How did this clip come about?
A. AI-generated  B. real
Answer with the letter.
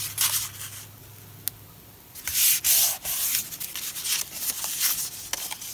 B